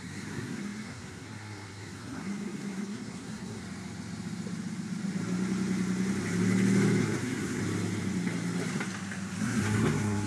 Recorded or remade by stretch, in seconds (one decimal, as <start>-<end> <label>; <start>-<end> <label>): 0.0-3.6 remade; 3.6-7.0 recorded; 7.0-7.6 remade; 7.6-9.4 recorded; 9.4-10.3 remade